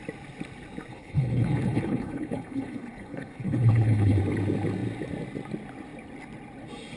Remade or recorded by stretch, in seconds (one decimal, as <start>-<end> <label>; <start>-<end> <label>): 0.0-0.9 recorded; 0.9-4.2 remade; 4.2-7.0 recorded